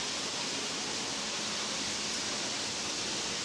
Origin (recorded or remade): recorded